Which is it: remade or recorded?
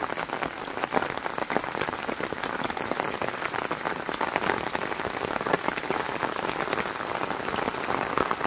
recorded